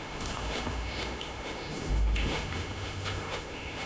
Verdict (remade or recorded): remade